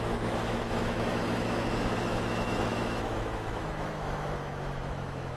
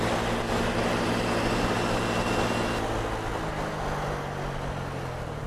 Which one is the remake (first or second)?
first